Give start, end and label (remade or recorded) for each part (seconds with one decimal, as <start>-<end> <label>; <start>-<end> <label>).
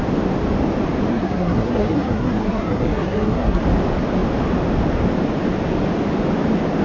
0.0-1.1 recorded; 1.1-3.6 remade; 3.6-6.8 recorded